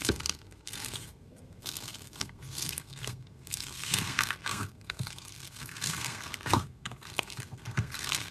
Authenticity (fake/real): fake